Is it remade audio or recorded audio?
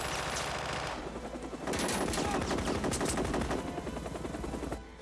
recorded